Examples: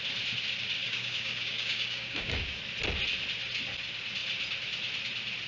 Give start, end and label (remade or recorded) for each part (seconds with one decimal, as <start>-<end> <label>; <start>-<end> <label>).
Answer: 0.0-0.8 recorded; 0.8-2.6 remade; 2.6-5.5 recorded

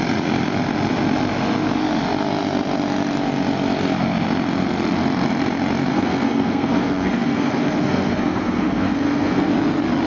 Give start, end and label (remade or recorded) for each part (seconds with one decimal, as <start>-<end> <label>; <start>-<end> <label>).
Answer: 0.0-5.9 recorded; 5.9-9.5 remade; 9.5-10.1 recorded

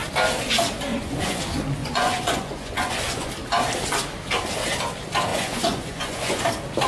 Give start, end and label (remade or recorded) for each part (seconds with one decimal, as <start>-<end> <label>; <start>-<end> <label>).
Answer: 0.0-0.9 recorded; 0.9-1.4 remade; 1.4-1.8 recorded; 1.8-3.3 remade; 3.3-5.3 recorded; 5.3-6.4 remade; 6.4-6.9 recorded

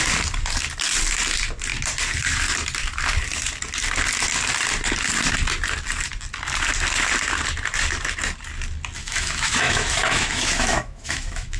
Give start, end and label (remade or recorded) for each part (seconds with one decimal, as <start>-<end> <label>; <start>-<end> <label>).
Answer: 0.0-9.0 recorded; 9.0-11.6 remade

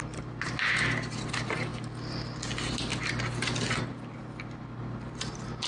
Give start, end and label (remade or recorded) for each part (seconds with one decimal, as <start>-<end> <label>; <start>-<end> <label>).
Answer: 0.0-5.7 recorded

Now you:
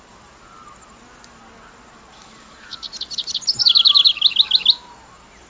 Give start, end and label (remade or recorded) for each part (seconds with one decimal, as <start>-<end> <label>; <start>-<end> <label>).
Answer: 0.0-5.5 recorded

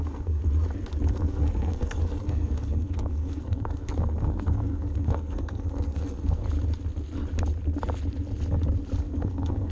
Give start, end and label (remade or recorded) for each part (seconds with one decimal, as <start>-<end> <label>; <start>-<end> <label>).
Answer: 0.0-0.4 remade; 0.4-1.1 recorded; 1.1-6.4 remade; 6.4-9.0 recorded; 9.0-9.7 remade

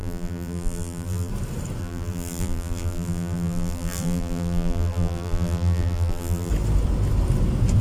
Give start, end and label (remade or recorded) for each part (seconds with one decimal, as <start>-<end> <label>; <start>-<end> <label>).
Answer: 0.0-1.3 remade; 1.3-1.8 recorded; 1.8-6.5 remade; 6.5-7.8 recorded